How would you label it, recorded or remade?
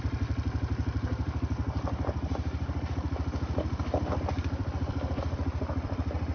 remade